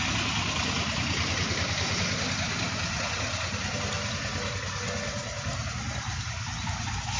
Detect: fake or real real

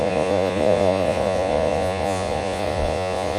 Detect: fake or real fake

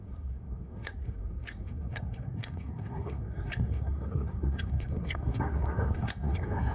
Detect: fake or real fake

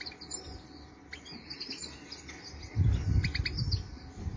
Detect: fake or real real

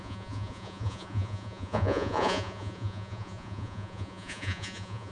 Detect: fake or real fake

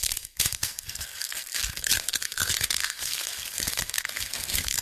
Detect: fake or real fake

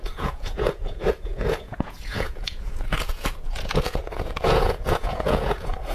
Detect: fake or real fake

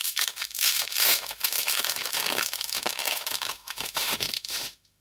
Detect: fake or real fake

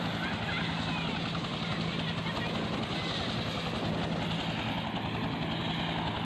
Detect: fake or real real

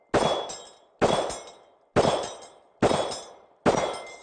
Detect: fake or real real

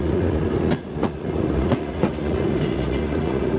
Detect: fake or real fake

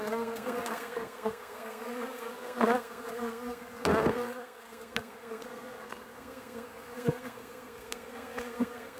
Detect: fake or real fake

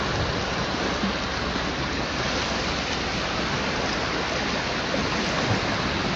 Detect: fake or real real